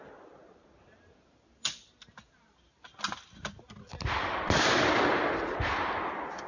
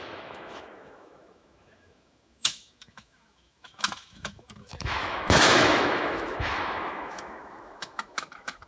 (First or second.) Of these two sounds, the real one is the first